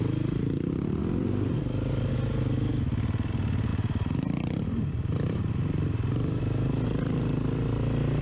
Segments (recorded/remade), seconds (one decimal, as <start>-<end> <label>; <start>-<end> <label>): 0.0-3.7 recorded; 3.7-6.4 remade; 6.4-8.2 recorded